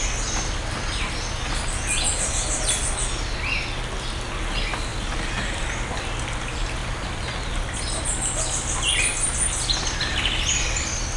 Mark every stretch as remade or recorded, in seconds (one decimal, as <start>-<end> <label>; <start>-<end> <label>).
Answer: 0.0-11.2 recorded

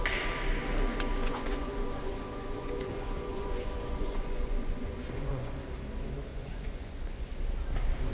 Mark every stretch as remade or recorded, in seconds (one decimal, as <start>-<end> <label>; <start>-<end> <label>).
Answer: 0.0-1.2 recorded; 1.2-5.5 remade; 5.5-6.3 recorded; 6.3-7.3 remade; 7.3-8.1 recorded

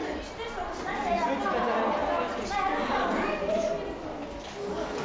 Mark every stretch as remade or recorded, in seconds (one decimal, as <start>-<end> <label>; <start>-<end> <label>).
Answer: 0.0-5.0 recorded

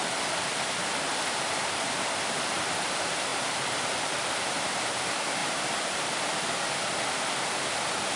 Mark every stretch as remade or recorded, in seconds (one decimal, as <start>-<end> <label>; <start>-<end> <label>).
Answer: 0.0-8.2 recorded

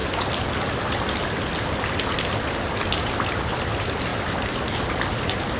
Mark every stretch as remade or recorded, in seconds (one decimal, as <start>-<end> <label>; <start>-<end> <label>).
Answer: 0.0-5.6 recorded

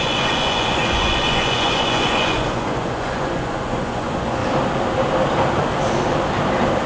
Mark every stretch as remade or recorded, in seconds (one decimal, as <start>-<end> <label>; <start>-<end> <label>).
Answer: 0.0-4.4 remade; 4.4-6.9 recorded

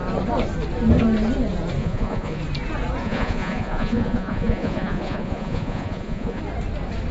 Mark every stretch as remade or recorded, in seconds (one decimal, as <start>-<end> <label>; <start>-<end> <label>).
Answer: 0.0-1.8 recorded; 1.8-2.4 remade; 2.4-3.0 recorded; 3.0-6.4 remade; 6.4-7.1 recorded